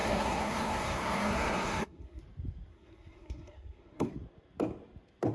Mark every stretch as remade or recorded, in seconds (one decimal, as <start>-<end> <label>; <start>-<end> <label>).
0.0-2.2 remade; 2.2-2.7 recorded; 2.7-4.1 remade; 4.1-5.3 recorded